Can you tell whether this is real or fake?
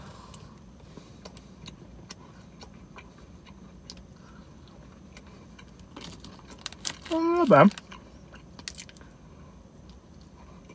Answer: real